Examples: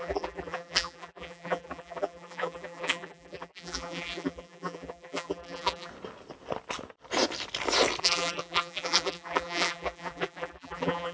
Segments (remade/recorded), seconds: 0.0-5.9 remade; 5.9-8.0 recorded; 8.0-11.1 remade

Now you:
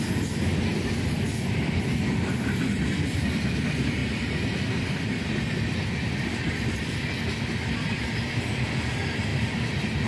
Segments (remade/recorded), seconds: 0.0-10.1 recorded

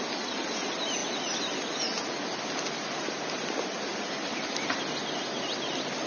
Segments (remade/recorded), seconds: 0.0-6.1 recorded

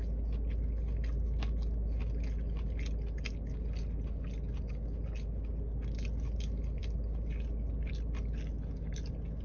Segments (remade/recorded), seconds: 0.0-9.4 recorded

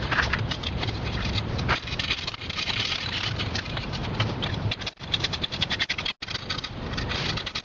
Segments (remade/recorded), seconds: 0.0-4.0 remade; 4.0-4.5 recorded; 4.5-5.8 remade; 5.8-7.6 recorded

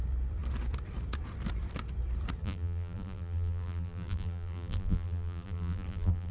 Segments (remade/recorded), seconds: 0.0-2.4 recorded; 2.4-6.3 remade